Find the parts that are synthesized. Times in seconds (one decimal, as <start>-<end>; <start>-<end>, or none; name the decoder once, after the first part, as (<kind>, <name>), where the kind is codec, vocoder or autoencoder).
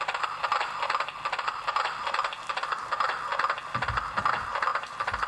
none